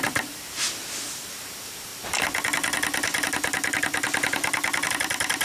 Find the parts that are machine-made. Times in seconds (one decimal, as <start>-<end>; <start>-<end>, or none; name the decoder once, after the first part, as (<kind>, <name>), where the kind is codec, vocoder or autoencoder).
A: 0.0-1.9 (vocoder, BigVGAN v2); 4.9-5.4